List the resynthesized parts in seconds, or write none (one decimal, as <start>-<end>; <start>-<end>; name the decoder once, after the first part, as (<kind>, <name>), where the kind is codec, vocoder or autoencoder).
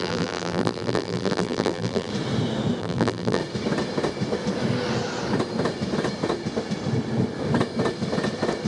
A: 0.0-2.1 (vocoder, BigVGAN v2); 2.8-3.4